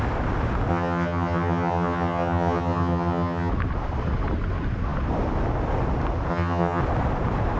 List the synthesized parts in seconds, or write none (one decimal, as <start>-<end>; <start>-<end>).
0.7-3.5; 6.3-6.8